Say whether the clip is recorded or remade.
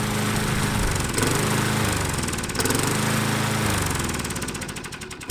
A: recorded